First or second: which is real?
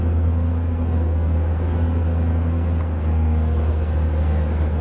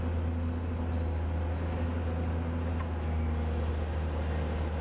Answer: second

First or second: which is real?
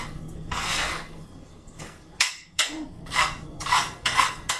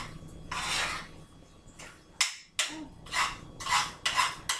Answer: second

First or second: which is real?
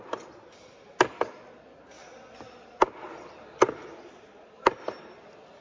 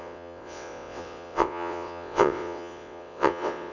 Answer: first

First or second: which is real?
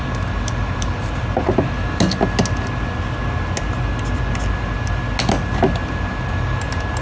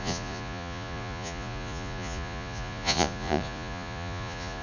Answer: first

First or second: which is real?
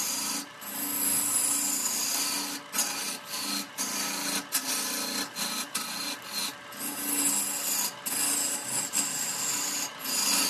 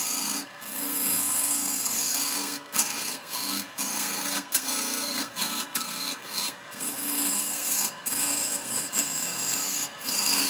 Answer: first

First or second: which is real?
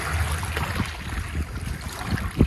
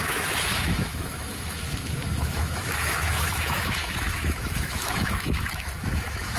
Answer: first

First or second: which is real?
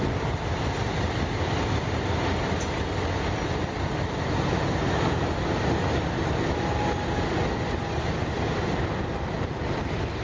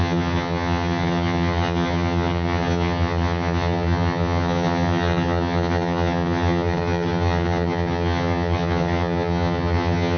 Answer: first